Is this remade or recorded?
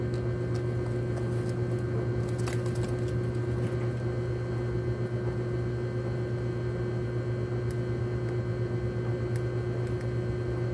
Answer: recorded